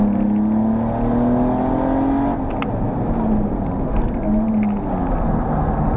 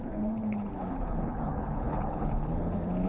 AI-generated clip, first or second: second